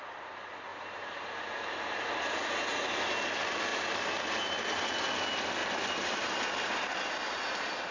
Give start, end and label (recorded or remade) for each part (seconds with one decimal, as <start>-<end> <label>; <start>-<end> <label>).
0.0-0.7 recorded; 0.7-2.0 remade; 2.0-3.7 recorded; 3.7-4.5 remade; 4.5-5.6 recorded; 5.6-7.1 remade; 7.1-7.9 recorded

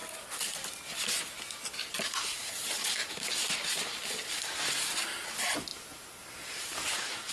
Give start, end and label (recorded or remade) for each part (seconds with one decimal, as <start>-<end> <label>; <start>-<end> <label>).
0.0-7.3 recorded

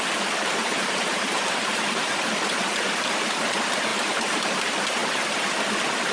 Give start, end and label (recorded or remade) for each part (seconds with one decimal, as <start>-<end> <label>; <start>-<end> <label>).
0.0-0.6 recorded; 0.6-2.2 remade; 2.2-3.9 recorded; 3.9-4.6 remade; 4.6-6.1 recorded

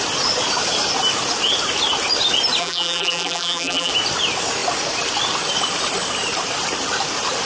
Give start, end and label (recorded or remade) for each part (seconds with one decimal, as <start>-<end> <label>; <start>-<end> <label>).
0.0-2.6 recorded; 2.6-3.9 remade; 3.9-7.5 recorded

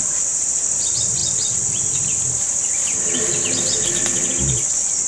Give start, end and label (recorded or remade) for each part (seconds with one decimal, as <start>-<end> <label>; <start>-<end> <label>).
0.0-5.1 recorded